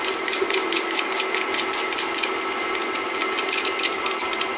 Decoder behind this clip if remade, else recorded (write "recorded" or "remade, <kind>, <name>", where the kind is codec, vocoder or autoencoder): recorded